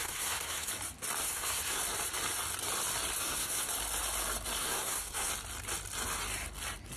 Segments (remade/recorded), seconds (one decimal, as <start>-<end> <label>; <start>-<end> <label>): 0.0-0.7 remade; 0.7-1.2 recorded; 1.2-1.8 remade; 1.8-3.2 recorded; 3.2-3.7 remade; 3.7-4.6 recorded; 4.6-5.3 remade; 5.3-7.0 recorded